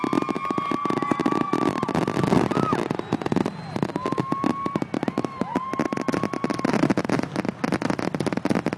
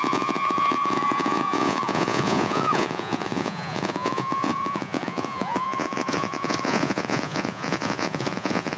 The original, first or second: first